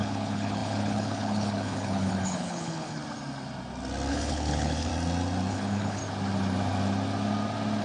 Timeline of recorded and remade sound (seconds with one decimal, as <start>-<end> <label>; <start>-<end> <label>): 0.0-3.0 remade; 3.0-4.1 recorded; 4.1-4.9 remade; 4.9-5.5 recorded; 5.5-6.0 remade; 6.0-7.8 recorded